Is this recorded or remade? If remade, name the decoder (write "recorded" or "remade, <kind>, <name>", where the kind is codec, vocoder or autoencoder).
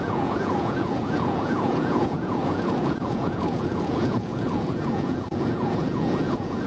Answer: remade, vocoder, Vocos